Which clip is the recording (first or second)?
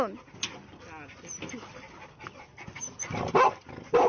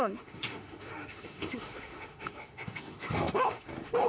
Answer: first